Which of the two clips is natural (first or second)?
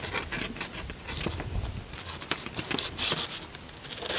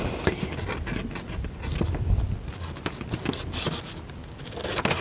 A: second